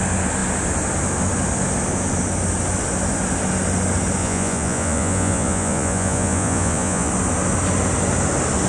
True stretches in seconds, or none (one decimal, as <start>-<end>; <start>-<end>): 0.0-4.2; 7.1-8.7